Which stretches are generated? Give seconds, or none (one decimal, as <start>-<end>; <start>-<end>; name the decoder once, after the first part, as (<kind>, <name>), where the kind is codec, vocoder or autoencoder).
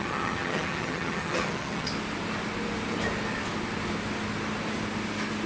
0.0-1.9 (vocoder, HiFi-GAN)